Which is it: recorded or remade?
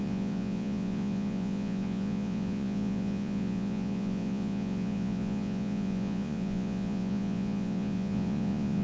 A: remade